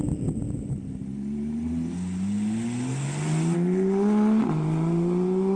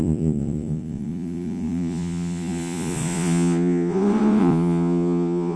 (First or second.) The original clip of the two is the first